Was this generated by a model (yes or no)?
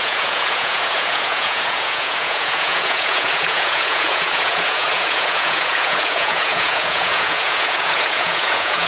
yes